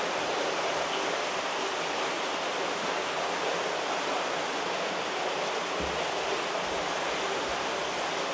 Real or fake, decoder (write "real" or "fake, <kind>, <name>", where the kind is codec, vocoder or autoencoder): real